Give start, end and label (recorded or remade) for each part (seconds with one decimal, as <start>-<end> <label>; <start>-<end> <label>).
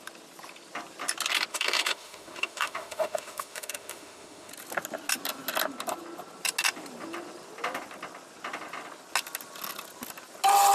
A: 0.0-1.5 recorded; 1.5-4.5 remade; 4.5-10.7 recorded